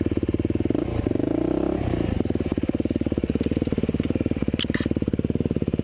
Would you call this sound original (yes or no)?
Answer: no